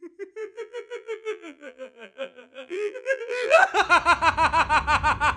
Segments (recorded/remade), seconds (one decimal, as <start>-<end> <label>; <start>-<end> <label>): 0.0-0.4 recorded; 0.4-3.6 remade; 3.6-5.4 recorded